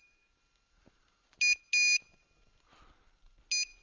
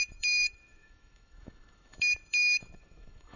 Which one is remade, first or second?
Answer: second